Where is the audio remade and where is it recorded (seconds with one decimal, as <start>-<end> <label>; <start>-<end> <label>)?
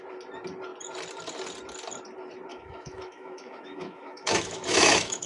0.0-2.5 recorded; 2.5-5.3 remade